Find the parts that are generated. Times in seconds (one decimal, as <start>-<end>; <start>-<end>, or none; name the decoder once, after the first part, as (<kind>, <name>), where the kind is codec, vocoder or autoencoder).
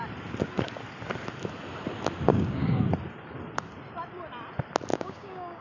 2.3-2.8 (codec, DAC); 4.9-5.6